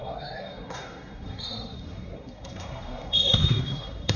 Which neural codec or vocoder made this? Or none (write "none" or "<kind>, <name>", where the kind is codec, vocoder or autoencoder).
codec, SNAC